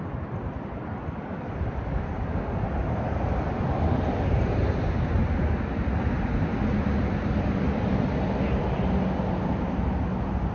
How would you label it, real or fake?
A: real